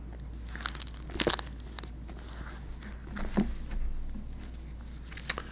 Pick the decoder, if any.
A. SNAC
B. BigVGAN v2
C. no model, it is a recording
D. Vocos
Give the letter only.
C